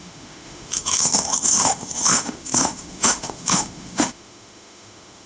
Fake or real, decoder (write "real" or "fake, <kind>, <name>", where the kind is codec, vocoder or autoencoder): fake, autoencoder, DAC-VAE